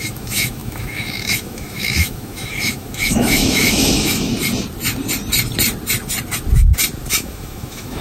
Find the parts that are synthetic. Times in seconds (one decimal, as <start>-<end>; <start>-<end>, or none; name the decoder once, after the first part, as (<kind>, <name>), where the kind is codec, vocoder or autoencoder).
0.0-4.3 (autoencoder, DAC-VAE); 7.1-8.0